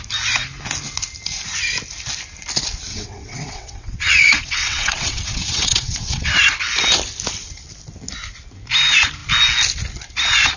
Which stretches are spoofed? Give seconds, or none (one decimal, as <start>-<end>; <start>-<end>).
2.9-6.3